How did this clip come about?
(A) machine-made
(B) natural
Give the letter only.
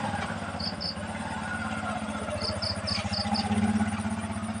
B